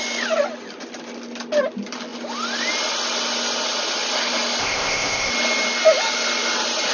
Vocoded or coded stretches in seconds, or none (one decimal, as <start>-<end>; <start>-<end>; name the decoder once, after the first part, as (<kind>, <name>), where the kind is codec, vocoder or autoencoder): 4.6-5.3 (codec, ZipCodec)